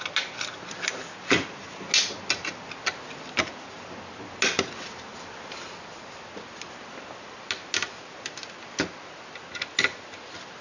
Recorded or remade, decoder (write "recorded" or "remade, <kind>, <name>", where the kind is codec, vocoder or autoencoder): recorded